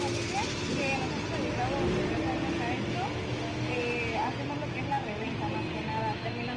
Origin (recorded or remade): recorded